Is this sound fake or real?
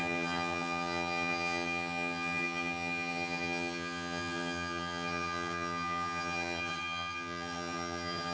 fake